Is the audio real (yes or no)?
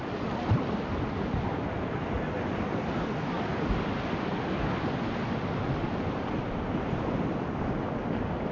yes